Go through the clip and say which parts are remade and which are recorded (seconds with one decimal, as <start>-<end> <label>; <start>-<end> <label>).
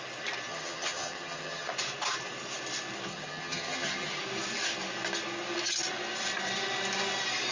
0.0-0.5 recorded; 0.5-1.7 remade; 1.7-3.1 recorded; 3.1-4.2 remade; 4.2-7.5 recorded